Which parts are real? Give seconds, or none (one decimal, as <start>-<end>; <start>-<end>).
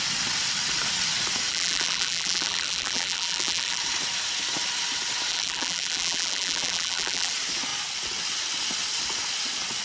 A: 0.0-1.5; 3.8-5.3; 7.3-9.8